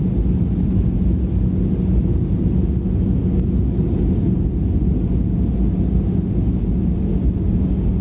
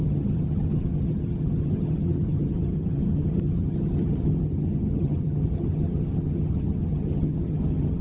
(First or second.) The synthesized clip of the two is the second